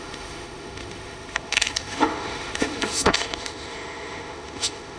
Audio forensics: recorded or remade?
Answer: remade